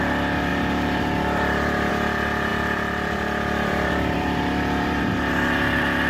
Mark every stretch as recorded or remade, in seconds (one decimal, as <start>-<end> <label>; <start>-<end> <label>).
0.0-0.5 recorded; 0.5-1.9 remade; 1.9-2.5 recorded; 2.5-5.0 remade; 5.0-6.1 recorded